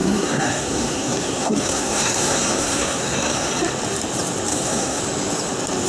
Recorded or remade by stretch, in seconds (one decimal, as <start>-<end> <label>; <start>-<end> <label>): 0.0-3.5 remade; 3.5-4.5 recorded; 4.5-5.0 remade; 5.0-5.9 recorded